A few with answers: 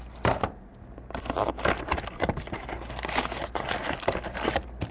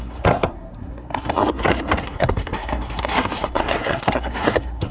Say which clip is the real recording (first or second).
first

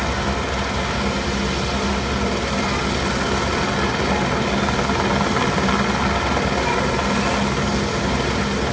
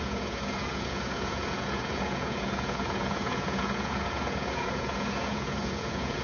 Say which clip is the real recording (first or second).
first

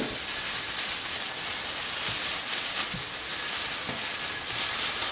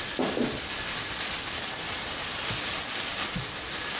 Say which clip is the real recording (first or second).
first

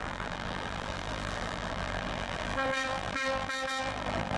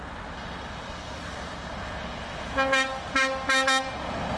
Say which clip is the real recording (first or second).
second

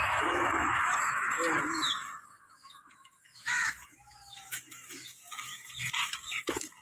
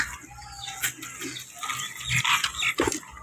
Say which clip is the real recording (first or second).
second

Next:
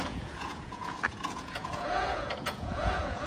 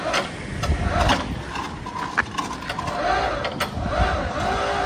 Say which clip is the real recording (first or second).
second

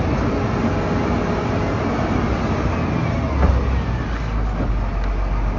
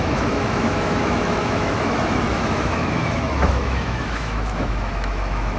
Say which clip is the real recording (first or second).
first